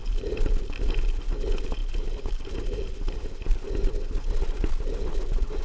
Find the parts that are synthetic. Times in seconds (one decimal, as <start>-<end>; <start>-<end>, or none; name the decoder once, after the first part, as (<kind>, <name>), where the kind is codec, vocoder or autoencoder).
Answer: none